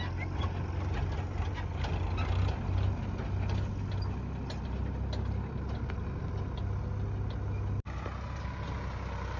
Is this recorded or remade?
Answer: recorded